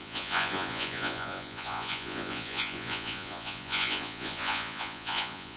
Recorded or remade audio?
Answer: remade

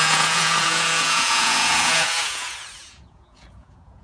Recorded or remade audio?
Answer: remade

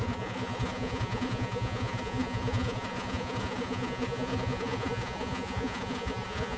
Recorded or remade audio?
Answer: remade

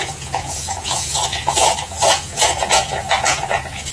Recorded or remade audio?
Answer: remade